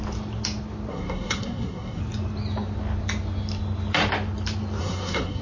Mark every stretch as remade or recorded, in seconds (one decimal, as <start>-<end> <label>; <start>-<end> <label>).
0.0-0.9 recorded; 0.9-2.0 remade; 2.0-4.8 recorded; 4.8-5.4 remade